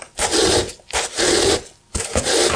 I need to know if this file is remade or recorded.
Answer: recorded